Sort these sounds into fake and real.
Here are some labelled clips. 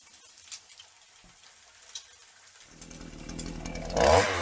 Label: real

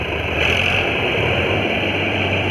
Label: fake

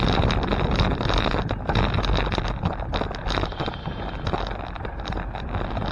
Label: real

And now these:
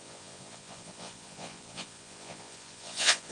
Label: fake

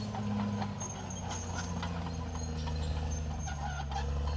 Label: real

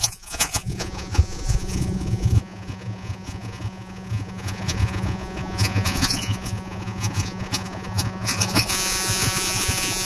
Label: fake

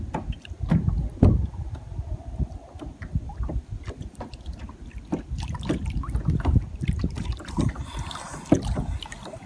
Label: real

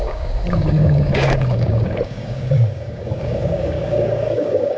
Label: fake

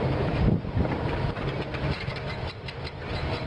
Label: fake